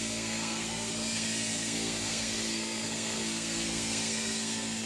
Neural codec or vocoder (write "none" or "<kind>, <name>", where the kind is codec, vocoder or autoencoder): codec, SNAC